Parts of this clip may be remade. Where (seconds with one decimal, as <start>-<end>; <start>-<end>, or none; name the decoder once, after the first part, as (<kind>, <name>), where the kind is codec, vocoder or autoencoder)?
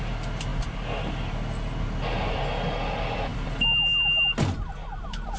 3.3-5.4 (vocoder, BigVGAN v2)